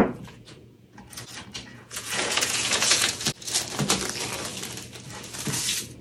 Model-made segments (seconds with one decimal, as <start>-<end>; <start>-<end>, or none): 0.0-1.0; 1.7-3.2